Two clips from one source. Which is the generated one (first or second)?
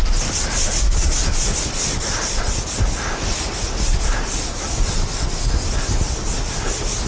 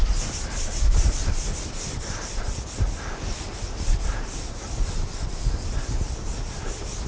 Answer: second